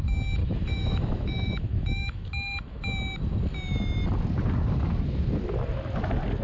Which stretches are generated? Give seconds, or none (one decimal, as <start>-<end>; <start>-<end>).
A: 0.4-2.8